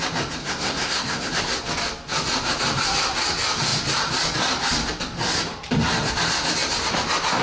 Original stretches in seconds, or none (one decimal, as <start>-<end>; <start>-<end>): 0.0-0.4; 1.3-7.4